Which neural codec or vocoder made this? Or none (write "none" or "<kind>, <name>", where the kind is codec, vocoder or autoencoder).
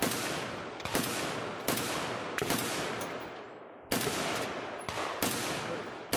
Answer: none